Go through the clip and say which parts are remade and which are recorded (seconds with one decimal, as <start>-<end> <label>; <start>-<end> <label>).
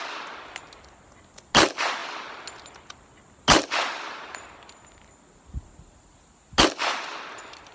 0.0-7.7 recorded